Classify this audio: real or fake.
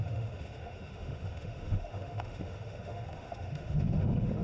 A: fake